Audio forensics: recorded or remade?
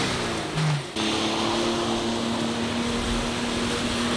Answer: recorded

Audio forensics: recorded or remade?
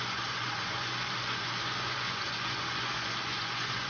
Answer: remade